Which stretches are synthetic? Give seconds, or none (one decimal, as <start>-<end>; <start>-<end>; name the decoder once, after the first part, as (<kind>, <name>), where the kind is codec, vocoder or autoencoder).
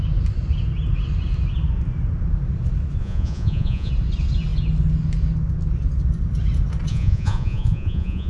3.0-3.9 (vocoder, Vocos); 6.9-8.3